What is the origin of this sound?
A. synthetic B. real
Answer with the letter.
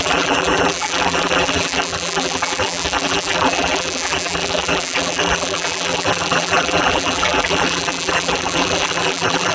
A